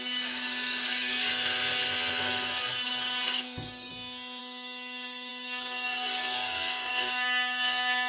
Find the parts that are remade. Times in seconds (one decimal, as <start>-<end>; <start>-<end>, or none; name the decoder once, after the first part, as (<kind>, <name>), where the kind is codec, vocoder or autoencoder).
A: 0.0-1.3 (codec, DAC); 2.2-3.9; 4.4-8.1